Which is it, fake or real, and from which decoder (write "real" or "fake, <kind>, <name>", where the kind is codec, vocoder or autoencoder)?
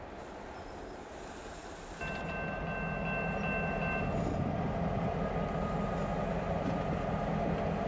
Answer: real